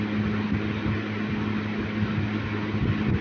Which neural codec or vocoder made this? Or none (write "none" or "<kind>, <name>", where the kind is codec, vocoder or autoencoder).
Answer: none